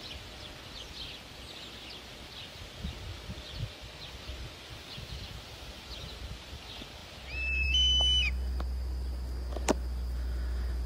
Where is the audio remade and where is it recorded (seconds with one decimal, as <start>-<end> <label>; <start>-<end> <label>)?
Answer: 0.0-10.9 recorded